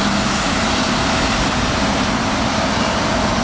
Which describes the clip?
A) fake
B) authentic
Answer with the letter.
B